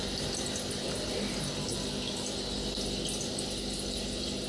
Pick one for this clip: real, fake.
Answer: real